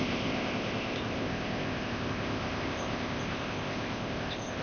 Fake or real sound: fake